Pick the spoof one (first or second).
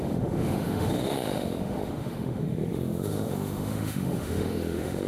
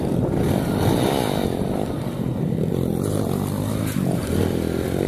first